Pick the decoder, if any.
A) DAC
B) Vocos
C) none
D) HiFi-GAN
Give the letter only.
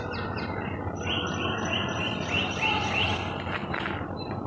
C